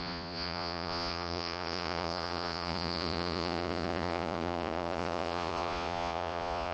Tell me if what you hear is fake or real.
fake